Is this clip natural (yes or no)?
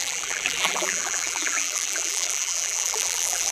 no